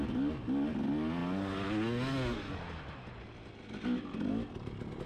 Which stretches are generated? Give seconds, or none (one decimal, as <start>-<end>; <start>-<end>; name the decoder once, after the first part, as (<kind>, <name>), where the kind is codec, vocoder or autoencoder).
none